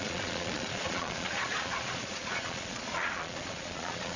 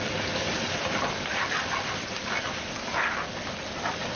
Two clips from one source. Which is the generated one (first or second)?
first